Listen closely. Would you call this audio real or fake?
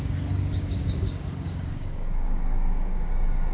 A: fake